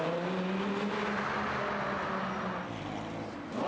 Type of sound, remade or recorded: recorded